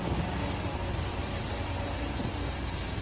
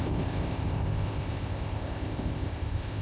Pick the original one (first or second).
first